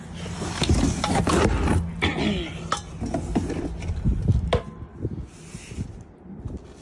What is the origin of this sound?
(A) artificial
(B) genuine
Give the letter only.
B